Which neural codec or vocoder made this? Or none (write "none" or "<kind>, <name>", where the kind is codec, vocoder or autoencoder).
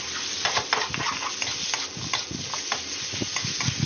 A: none